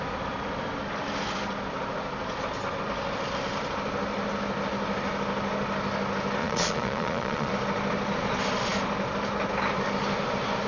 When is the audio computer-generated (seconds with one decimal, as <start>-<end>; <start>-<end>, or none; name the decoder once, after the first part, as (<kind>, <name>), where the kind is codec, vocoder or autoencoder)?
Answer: 6.4-7.5 (vocoder, Vocos)